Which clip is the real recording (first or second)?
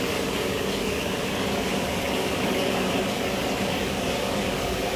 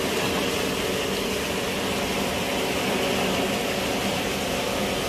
second